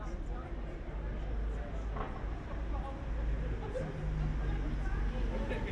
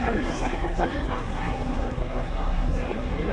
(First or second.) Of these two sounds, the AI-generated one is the second